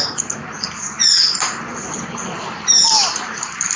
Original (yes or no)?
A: yes